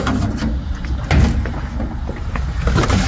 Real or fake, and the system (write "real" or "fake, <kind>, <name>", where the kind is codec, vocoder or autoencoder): real